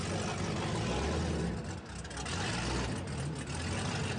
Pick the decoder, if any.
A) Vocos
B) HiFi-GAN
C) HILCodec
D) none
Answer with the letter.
D